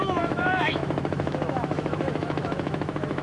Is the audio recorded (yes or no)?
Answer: no